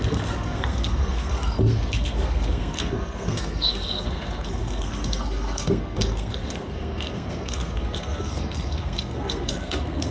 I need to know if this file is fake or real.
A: fake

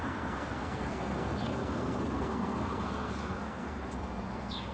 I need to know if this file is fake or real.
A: fake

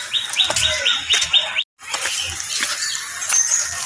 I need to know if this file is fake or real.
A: real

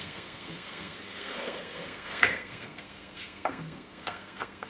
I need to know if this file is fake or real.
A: fake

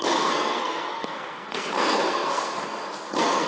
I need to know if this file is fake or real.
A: fake